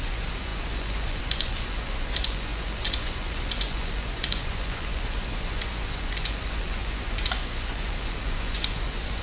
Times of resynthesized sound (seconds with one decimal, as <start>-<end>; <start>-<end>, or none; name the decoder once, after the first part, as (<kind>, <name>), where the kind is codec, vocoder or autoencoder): 0.0-9.2 (vocoder, Vocos)